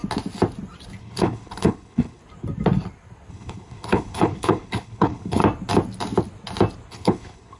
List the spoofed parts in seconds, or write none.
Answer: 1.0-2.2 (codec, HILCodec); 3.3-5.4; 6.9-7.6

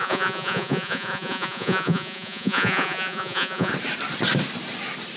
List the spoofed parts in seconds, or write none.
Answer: 0.0-3.7 (vocoder, Vocos)